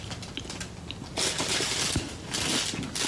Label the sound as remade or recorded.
recorded